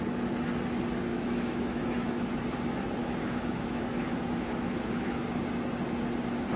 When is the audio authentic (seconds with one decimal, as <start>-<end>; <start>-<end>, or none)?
0.0-1.1; 2.3-3.0; 5.2-6.6